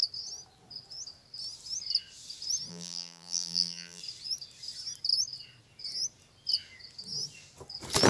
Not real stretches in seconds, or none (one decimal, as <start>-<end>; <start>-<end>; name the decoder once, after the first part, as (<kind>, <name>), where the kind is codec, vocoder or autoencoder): 2.7-4.0 (vocoder, BigVGAN v2)